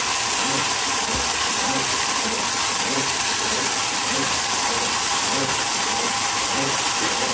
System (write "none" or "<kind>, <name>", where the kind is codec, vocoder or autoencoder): none